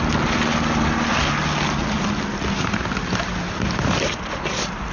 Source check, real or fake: real